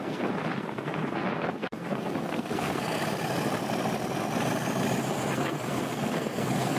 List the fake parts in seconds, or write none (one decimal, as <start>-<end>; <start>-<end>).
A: 0.0-3.0; 5.0-6.8